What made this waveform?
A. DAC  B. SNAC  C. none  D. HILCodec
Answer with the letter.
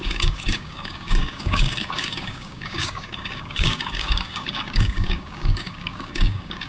A